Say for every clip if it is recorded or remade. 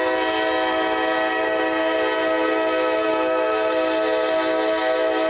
recorded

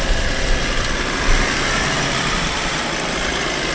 recorded